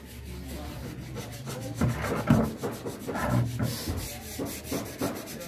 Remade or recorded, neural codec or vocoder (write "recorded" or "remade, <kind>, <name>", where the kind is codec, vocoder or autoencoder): recorded